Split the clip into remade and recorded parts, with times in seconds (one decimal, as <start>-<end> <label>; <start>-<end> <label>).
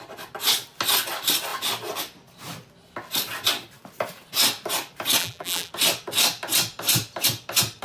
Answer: 0.0-5.2 recorded; 5.2-5.7 remade; 5.7-7.8 recorded